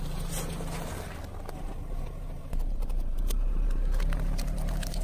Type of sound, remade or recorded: remade